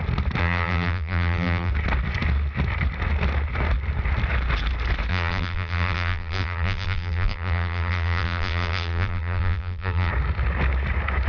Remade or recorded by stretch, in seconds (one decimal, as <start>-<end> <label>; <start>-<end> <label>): 0.0-0.4 recorded; 0.4-1.7 remade; 1.7-5.1 recorded; 5.1-10.1 remade; 10.1-11.3 recorded